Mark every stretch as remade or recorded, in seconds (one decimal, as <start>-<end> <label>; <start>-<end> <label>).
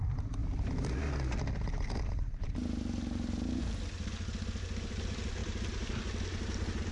0.0-0.4 recorded; 0.4-1.0 remade; 1.0-5.4 recorded; 5.4-6.0 remade; 6.0-6.9 recorded